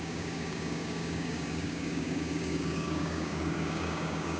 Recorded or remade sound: remade